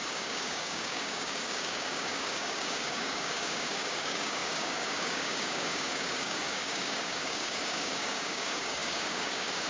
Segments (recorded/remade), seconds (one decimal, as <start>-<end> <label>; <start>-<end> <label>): 0.0-9.7 remade